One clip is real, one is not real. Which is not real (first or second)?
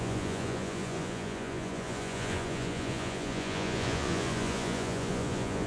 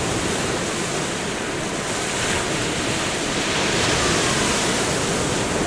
first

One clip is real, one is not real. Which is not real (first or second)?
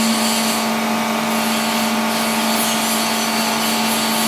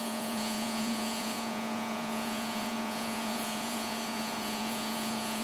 second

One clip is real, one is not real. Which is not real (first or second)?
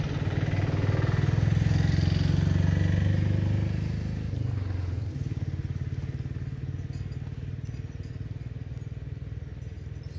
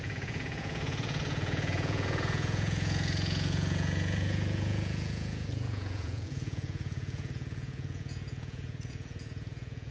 second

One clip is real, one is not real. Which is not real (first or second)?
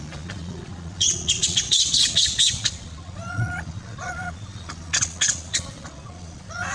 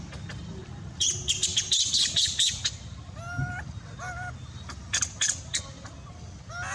first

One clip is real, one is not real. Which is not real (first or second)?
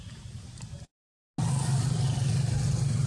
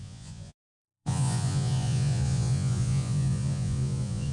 second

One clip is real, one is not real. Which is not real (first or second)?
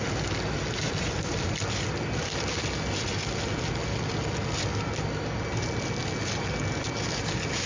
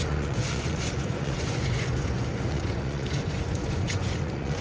second